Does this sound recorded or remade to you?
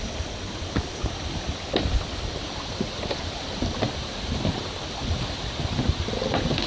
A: recorded